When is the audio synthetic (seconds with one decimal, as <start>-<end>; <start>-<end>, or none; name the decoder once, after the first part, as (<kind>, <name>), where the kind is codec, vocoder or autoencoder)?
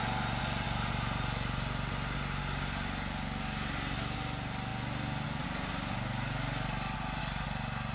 none